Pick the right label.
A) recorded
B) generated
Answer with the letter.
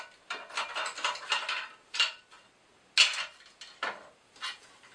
A